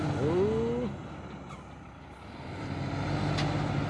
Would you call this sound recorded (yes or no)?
yes